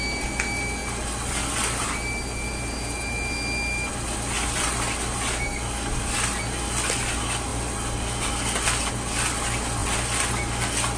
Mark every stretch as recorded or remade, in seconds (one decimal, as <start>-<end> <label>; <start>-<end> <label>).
0.0-11.0 recorded